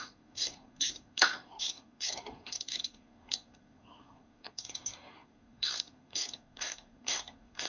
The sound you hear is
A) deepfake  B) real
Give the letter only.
A